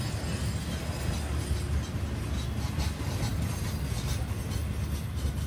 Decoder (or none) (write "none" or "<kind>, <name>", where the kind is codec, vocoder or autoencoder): none